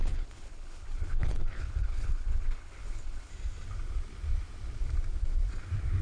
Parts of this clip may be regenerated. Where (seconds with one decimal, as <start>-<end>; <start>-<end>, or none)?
0.0-3.3